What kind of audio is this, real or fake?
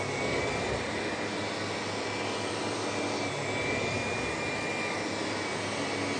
real